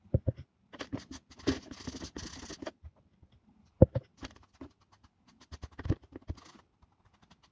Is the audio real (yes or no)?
yes